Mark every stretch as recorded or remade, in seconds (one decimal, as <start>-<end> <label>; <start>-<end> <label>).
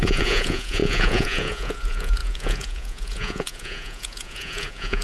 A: 0.0-5.0 remade